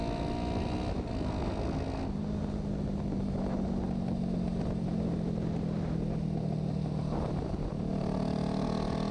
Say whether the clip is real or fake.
real